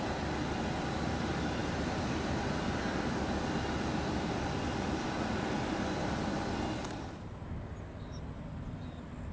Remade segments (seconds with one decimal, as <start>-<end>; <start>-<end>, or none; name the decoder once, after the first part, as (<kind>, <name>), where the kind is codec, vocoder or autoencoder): none